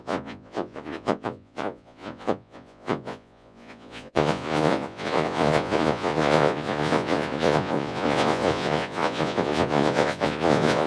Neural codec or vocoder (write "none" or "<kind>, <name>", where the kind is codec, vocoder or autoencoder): vocoder, Vocos